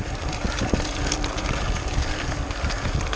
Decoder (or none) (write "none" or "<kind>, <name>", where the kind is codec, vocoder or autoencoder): none